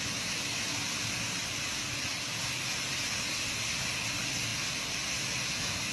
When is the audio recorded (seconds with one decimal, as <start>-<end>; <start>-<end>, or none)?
0.0-5.9